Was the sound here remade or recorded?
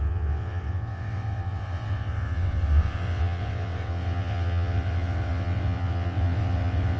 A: remade